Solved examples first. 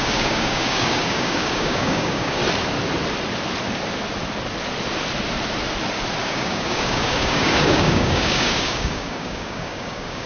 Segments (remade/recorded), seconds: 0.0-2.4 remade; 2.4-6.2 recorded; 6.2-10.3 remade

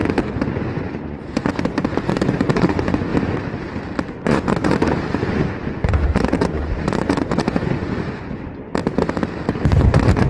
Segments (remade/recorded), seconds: 0.0-3.1 remade; 3.1-4.1 recorded; 4.1-8.8 remade; 8.8-9.9 recorded; 9.9-10.3 remade

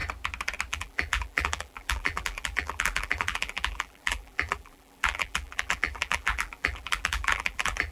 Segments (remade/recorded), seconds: 0.0-0.7 recorded; 0.7-7.9 remade

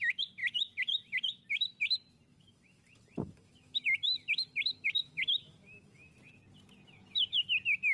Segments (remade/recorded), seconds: 0.0-2.3 recorded; 2.3-6.1 remade; 6.1-7.9 recorded

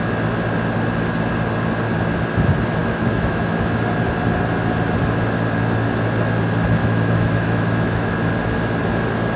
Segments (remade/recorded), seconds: 0.0-2.8 recorded; 2.8-3.5 remade; 3.5-6.8 recorded; 6.8-8.1 remade; 8.1-9.4 recorded

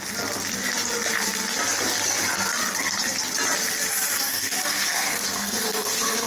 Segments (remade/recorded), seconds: 0.0-4.3 recorded; 4.3-6.3 remade